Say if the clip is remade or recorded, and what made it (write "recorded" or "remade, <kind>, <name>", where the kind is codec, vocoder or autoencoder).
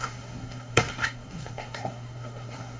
remade, codec, SNAC